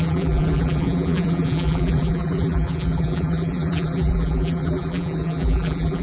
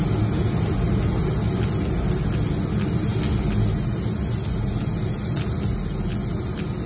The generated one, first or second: first